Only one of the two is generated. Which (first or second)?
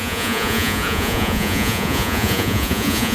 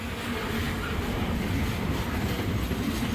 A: first